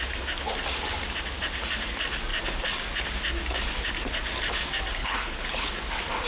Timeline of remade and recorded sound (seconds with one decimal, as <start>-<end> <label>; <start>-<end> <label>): 0.0-5.0 recorded; 5.0-5.7 remade; 5.7-6.3 recorded